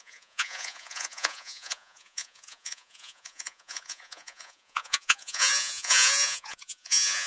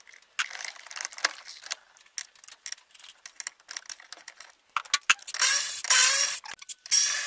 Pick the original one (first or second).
second